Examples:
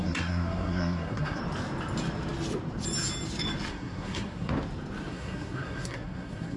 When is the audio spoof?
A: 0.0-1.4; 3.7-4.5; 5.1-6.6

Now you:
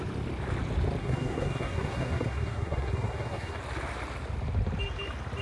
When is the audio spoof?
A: 1.0-3.6

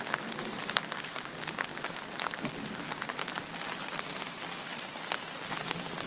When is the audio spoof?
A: 1.7-2.5; 3.0-4.1

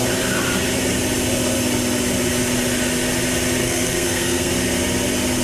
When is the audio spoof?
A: 3.6-4.5

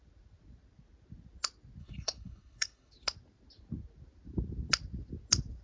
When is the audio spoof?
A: 1.8-2.9

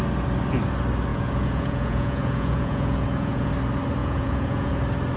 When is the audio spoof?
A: 1.1-3.5; 4.0-4.7

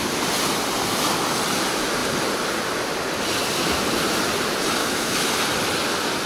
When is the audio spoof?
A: 4.8-5.3